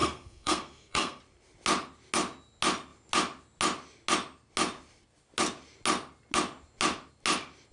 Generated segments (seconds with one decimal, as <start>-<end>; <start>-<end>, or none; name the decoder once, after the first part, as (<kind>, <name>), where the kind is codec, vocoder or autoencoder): 0.0-1.2 (codec, SNAC)